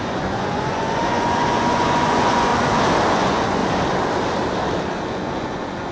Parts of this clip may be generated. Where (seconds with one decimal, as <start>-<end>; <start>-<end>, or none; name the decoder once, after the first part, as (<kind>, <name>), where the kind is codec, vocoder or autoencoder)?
0.0-2.5 (vocoder, Vocos); 3.1-3.6; 5.1-5.9